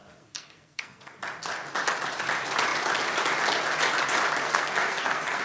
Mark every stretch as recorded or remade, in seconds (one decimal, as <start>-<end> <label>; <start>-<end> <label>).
0.0-1.2 remade; 1.2-4.4 recorded; 4.4-5.4 remade